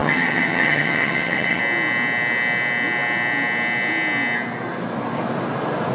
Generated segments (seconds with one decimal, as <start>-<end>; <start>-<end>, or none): 0.0-1.6